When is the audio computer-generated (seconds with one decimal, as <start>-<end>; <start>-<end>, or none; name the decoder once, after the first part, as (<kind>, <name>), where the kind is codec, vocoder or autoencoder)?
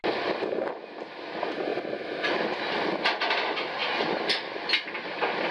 none